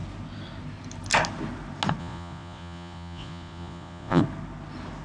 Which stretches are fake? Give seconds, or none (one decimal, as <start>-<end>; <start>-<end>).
2.0-4.2